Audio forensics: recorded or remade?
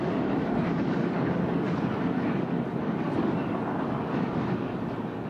remade